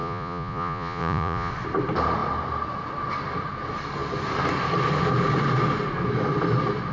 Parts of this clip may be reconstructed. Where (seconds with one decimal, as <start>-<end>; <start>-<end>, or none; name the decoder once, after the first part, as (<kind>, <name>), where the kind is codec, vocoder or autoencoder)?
0.0-1.5 (vocoder, Vocos)